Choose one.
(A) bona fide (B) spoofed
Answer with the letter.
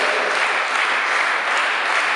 A